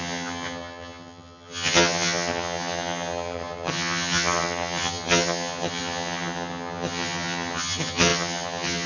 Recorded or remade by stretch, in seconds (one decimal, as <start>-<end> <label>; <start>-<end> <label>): 0.0-8.9 remade